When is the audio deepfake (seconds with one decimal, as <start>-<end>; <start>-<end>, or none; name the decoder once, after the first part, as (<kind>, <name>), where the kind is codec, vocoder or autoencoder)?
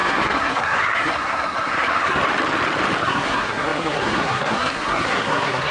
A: 0.0-2.2 (codec, SNAC); 3.0-5.7